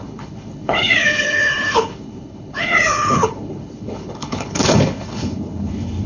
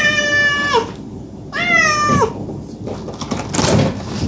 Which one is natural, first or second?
second